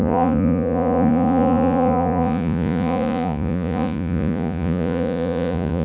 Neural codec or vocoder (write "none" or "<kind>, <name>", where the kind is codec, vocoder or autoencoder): vocoder, Vocos